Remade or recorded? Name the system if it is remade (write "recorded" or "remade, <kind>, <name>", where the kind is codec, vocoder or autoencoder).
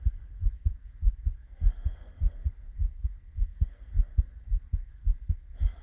remade, codec, SNAC